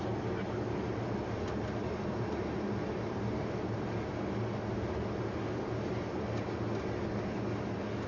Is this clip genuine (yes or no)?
yes